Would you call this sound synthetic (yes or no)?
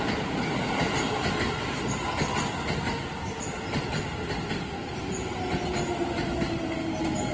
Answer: no